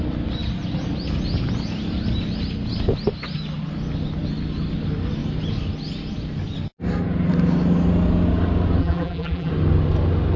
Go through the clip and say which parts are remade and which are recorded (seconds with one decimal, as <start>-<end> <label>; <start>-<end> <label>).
0.0-8.8 recorded; 8.8-9.5 remade; 9.5-10.4 recorded